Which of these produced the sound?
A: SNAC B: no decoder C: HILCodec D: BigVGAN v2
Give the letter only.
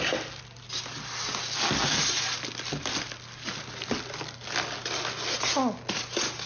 B